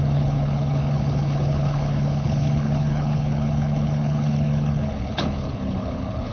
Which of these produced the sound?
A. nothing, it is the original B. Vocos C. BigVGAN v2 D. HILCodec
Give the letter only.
D